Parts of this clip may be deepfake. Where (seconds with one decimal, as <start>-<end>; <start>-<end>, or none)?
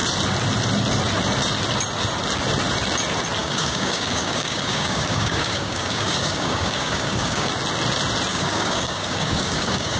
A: 3.4-7.5; 8.3-10.0